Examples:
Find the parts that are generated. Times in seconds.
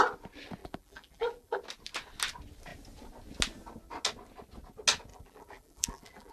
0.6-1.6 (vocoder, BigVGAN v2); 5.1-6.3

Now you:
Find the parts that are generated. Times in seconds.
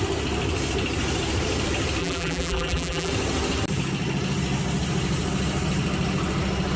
2.0-3.1 (vocoder, BigVGAN v2)